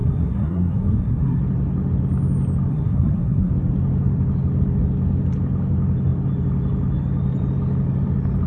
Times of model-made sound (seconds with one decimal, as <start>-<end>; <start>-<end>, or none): 0.0-1.4; 2.7-3.5